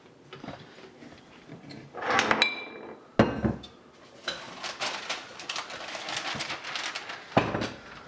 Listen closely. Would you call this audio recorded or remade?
recorded